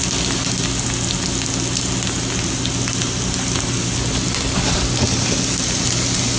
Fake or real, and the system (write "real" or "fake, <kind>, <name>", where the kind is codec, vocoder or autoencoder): real